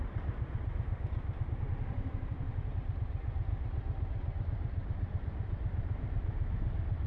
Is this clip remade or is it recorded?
remade